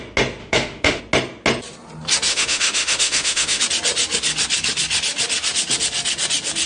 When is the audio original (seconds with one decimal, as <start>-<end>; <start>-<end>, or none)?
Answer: 0.0-0.4; 1.0-2.3; 3.6-6.7